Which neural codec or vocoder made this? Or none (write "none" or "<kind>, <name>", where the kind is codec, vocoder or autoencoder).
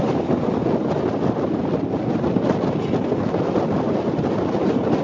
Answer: none